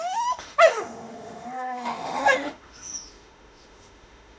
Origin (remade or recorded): remade